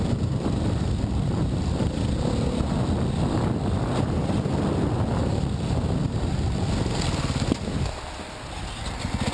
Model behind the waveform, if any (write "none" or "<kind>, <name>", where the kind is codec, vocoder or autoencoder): none